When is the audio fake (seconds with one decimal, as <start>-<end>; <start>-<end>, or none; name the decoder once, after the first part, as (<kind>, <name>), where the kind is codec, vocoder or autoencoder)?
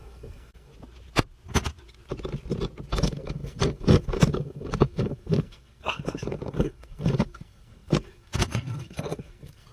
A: 0.0-0.7 (codec, SNAC); 2.9-9.7